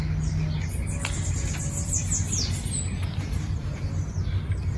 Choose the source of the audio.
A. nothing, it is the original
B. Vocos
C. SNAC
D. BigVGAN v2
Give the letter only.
A